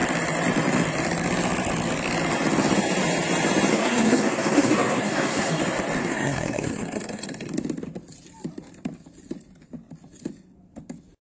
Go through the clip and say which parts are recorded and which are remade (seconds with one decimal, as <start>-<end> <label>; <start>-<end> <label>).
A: 0.0-3.7 recorded; 3.7-5.6 remade; 5.6-6.0 recorded; 6.0-7.5 remade; 7.5-11.3 recorded